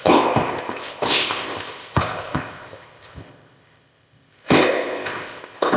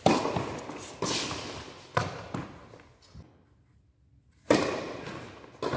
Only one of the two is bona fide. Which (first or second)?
second